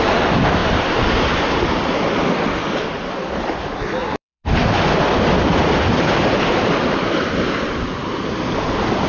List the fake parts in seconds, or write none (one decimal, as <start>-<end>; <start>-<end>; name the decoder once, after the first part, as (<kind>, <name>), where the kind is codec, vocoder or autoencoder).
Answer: 4.0-7.9 (vocoder, BigVGAN v2)